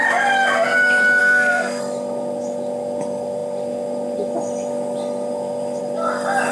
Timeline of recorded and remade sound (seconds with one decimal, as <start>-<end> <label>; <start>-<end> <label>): 0.0-1.2 recorded; 1.2-1.8 remade; 1.8-6.5 recorded